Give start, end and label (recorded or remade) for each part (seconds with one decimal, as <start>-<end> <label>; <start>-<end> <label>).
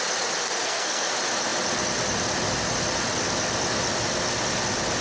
0.0-0.6 recorded; 0.6-1.1 remade; 1.1-5.0 recorded